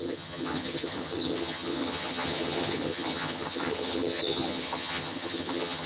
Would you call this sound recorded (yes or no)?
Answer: no